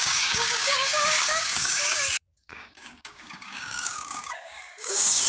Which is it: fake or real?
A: fake